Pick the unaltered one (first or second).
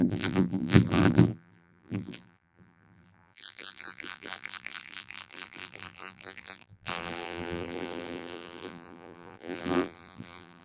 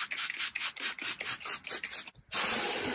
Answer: second